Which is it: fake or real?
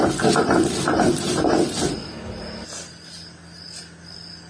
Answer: real